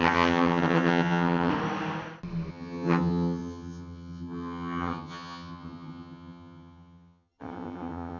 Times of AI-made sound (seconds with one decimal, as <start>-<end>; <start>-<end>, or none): 0.0-1.5; 2.5-8.2